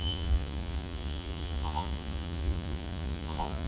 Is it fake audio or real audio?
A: fake